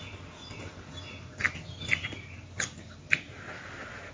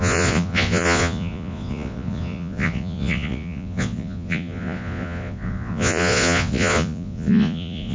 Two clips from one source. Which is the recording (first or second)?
first